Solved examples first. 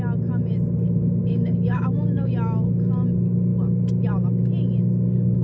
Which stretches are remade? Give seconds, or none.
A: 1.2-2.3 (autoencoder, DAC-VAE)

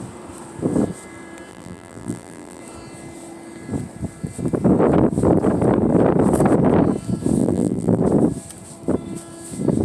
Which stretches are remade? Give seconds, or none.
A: 1.5-2.6 (vocoder, BigVGAN v2); 7.4-8.0

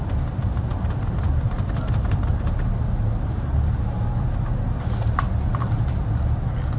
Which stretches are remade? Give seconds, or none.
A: none

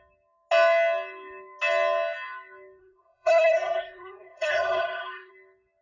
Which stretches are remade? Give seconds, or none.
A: 2.8-5.3 (codec, SNAC)